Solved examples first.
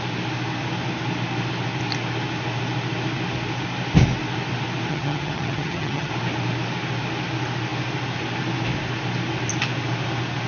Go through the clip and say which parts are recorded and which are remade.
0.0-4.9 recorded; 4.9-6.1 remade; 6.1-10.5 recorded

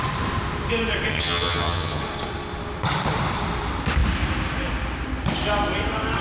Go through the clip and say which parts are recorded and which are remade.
0.0-1.1 recorded; 1.1-2.0 remade; 2.0-6.2 recorded

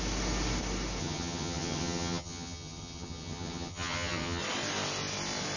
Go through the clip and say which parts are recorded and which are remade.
0.0-1.0 recorded; 1.0-4.4 remade; 4.4-5.6 recorded

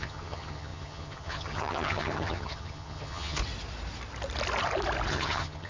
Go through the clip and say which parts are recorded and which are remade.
0.0-3.4 remade; 3.4-5.1 recorded; 5.1-5.7 remade

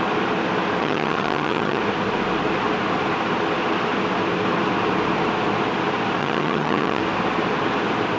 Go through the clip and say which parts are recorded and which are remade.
0.0-0.8 recorded; 0.8-1.8 remade; 1.8-6.2 recorded; 6.2-7.0 remade; 7.0-8.2 recorded

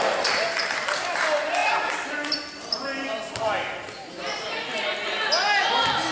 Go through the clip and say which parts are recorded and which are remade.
0.0-6.1 recorded

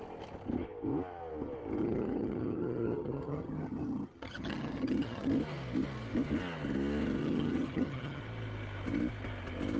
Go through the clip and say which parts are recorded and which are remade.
0.0-1.8 recorded; 1.8-5.3 remade; 5.3-7.2 recorded; 7.2-8.2 remade; 8.2-9.8 recorded